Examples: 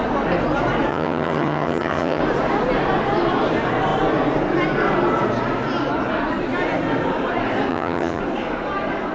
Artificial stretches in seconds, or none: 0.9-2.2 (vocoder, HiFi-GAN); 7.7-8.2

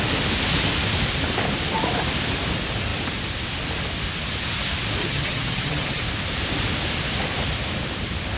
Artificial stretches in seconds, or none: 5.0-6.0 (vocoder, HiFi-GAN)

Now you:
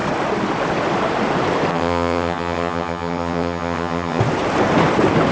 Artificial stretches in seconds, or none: 1.7-4.2 (vocoder, HiFi-GAN)